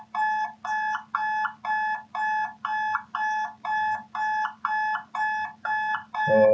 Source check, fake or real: real